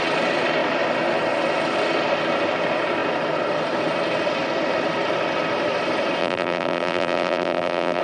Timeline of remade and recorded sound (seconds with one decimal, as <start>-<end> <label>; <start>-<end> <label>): 0.0-6.2 recorded; 6.2-8.0 remade